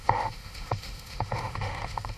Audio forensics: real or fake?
fake